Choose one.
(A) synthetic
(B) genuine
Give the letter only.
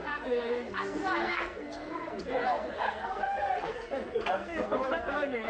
A